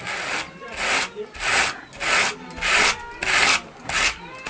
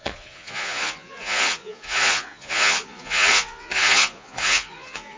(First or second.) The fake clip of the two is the second